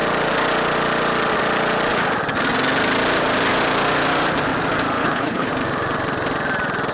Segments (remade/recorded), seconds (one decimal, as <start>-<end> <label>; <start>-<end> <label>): 0.0-5.0 recorded; 5.0-5.5 remade; 5.5-6.9 recorded